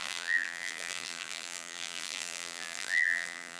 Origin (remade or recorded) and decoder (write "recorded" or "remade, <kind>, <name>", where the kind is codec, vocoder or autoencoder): remade, vocoder, BigVGAN v2